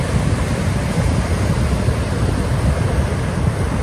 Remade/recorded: recorded